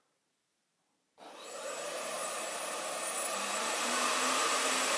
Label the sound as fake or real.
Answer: fake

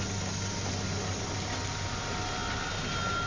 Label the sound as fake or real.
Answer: real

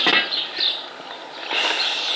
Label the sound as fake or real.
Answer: real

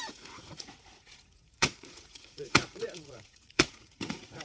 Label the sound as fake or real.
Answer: fake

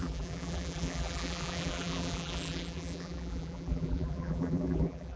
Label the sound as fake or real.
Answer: fake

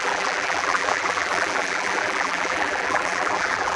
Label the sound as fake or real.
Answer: fake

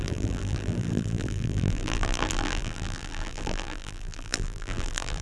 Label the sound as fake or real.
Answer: fake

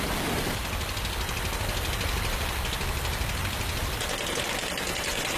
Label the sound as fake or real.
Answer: real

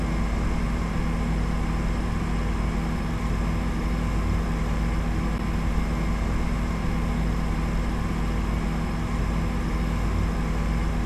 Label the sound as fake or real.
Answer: real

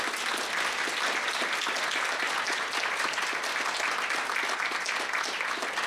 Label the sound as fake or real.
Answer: real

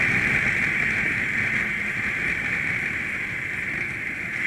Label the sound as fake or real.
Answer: real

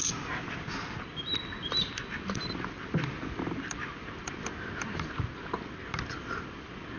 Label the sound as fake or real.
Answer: real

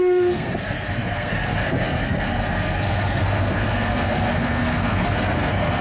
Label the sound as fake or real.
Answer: fake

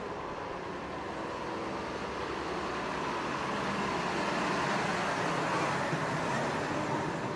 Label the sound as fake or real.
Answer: real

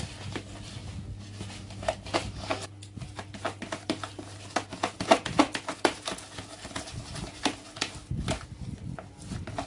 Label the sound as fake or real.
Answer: real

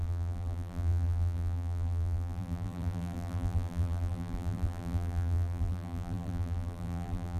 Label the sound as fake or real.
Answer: fake